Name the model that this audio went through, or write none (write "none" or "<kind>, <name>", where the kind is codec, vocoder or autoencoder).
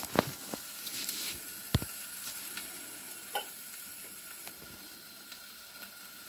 none